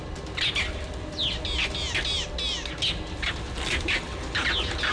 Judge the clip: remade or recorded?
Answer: recorded